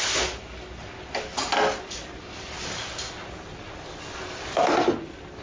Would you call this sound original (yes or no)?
yes